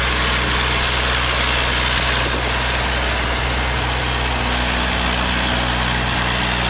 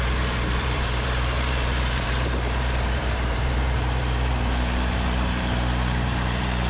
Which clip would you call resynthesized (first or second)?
second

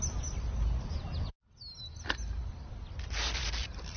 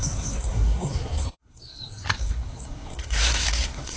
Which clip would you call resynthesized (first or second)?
second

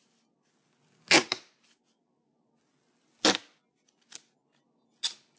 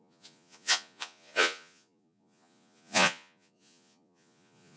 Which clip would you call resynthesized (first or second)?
second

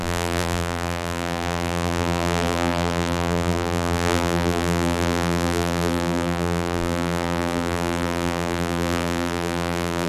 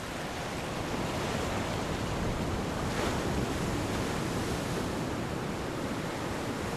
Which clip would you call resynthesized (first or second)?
first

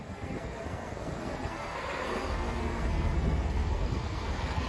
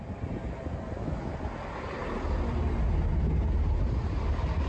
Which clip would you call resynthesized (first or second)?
first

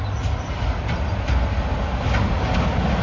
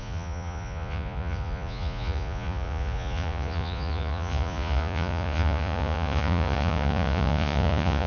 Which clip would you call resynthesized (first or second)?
second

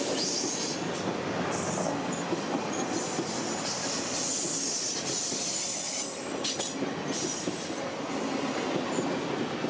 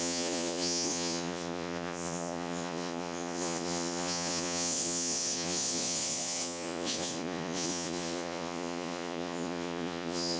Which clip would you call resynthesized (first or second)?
second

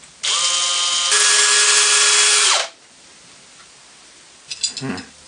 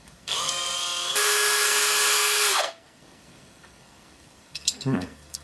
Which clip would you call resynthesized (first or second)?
second